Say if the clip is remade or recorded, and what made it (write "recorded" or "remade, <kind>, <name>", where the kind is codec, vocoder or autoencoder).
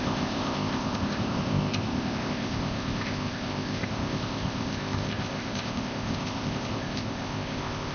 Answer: remade, codec, ZipCodec